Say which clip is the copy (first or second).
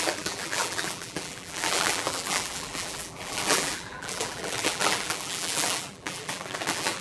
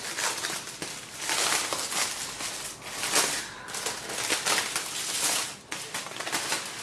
first